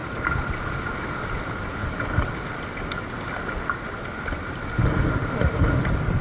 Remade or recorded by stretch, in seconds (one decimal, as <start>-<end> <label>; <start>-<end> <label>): 0.0-6.2 recorded